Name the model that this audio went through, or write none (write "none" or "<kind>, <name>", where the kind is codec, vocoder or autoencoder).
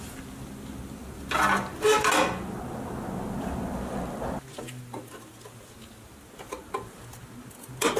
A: none